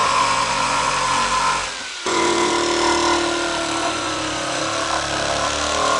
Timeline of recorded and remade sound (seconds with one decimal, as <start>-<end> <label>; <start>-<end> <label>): 0.0-0.9 remade; 0.9-1.8 recorded; 1.8-2.5 remade; 2.5-3.8 recorded; 3.8-4.6 remade; 4.6-6.0 recorded